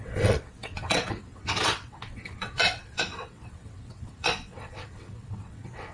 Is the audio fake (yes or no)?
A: yes